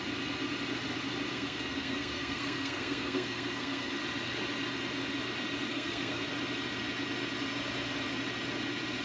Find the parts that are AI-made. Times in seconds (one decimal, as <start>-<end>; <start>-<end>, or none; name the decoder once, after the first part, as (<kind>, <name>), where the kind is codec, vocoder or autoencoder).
1.3-3.9 (codec, SNAC); 5.7-6.2